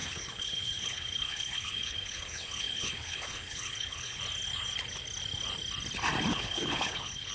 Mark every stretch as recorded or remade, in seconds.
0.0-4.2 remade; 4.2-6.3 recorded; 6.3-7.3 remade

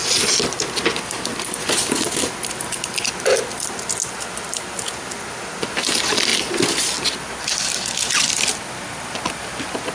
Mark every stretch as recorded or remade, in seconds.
0.0-9.9 recorded

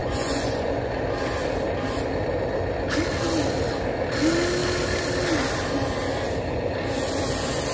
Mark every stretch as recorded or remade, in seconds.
0.0-0.9 remade; 0.9-7.7 recorded

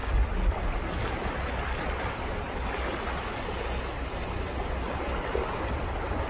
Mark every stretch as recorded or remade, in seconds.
0.0-6.3 recorded

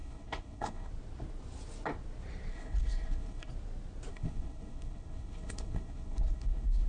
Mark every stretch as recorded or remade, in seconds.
0.0-0.9 remade; 0.9-2.5 recorded; 2.5-3.5 remade; 3.5-4.1 recorded; 4.1-6.9 remade